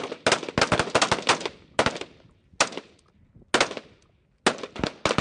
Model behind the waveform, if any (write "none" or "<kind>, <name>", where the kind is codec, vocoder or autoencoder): none